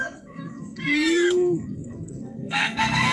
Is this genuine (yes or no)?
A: no